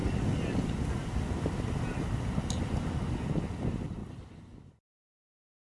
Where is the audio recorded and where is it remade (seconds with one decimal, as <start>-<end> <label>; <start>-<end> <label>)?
0.0-5.8 recorded